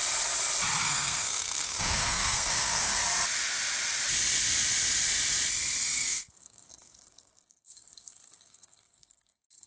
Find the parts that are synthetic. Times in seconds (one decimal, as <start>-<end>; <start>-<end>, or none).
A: 0.8-3.0; 5.8-9.7